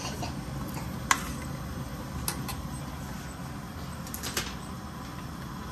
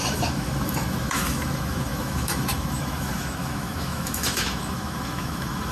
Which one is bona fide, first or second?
first